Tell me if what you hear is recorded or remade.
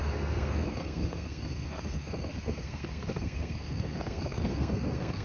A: remade